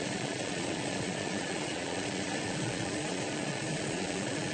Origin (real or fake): fake